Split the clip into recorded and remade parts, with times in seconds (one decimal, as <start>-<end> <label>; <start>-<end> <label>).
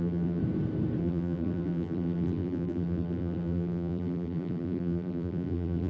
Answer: 0.0-0.4 remade; 0.4-1.0 recorded; 1.0-5.9 remade